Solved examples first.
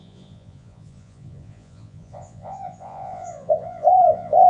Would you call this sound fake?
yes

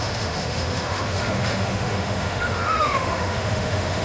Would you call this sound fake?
yes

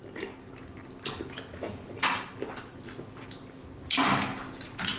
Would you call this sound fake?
no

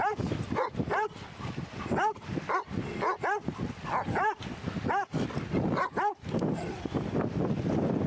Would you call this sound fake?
no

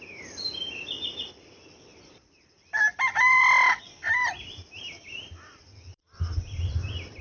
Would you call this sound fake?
yes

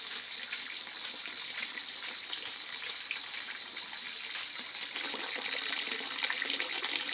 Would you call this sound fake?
no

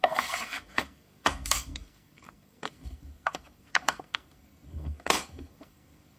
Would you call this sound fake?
yes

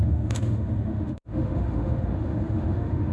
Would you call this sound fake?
yes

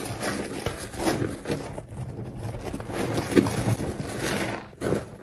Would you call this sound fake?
no